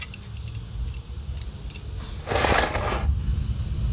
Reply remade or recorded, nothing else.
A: recorded